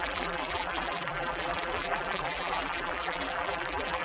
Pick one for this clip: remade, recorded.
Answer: remade